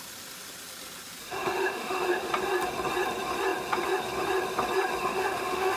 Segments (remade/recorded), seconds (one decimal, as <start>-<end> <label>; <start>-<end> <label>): 0.0-1.2 recorded; 1.2-2.3 remade; 2.3-5.0 recorded; 5.0-5.8 remade